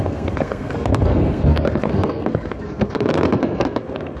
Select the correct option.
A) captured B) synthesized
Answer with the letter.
B